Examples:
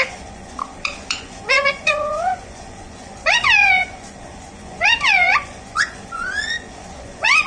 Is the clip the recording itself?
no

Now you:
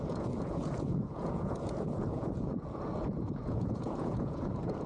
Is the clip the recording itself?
no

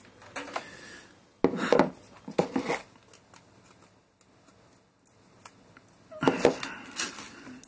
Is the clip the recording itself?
yes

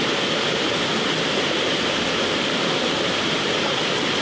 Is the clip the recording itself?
yes